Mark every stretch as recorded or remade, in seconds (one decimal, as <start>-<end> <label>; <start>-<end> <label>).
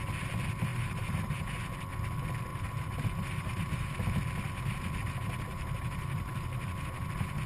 0.0-0.7 recorded; 0.7-1.4 remade; 1.4-2.5 recorded; 2.5-3.9 remade; 3.9-5.5 recorded; 5.5-6.3 remade; 6.3-7.5 recorded